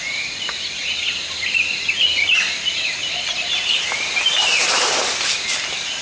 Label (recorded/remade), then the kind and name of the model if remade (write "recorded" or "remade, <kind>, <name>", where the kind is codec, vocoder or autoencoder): recorded